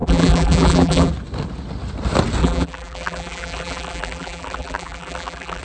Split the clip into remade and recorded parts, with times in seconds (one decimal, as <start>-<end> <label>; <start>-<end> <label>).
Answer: 0.0-1.1 remade; 1.1-2.4 recorded; 2.4-5.6 remade